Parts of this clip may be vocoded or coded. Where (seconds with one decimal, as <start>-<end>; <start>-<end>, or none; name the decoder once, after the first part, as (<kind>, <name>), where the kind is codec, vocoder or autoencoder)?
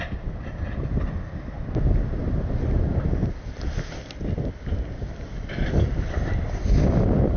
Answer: none